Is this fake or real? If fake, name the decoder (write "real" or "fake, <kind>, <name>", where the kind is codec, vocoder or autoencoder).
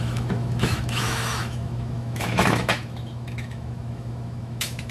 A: fake, autoencoder, DAC-VAE